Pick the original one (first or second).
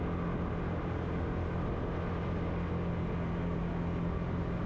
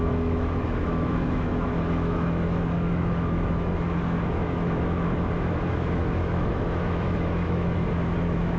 first